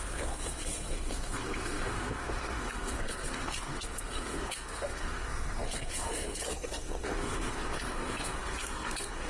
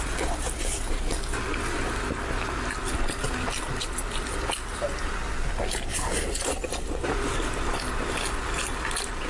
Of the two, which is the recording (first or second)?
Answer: second